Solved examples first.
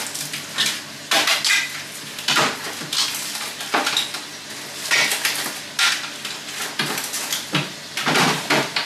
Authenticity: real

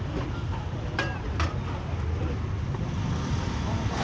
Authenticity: real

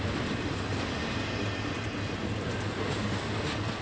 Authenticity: real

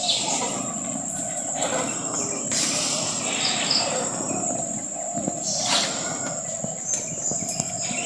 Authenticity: real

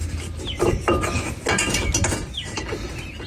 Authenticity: real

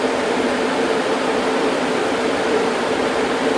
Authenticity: fake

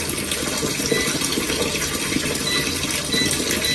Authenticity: real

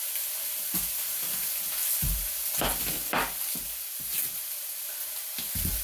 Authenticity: real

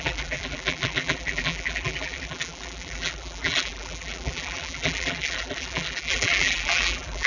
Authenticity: fake